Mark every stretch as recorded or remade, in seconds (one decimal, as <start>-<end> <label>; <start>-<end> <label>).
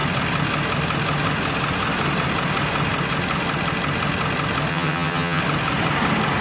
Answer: 0.0-4.7 recorded; 4.7-5.4 remade; 5.4-6.4 recorded